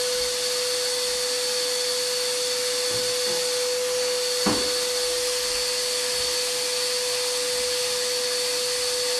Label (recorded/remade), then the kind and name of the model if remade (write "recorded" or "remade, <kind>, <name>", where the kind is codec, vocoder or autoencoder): recorded